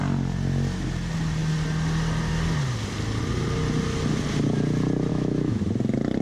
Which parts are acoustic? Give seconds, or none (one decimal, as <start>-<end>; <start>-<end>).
0.0-5.1; 5.6-6.2